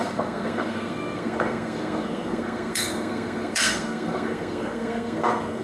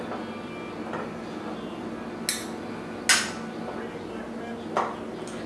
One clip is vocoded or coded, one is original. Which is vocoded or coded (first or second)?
first